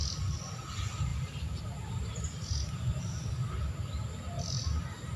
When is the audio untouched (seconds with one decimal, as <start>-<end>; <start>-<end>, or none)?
0.0-5.2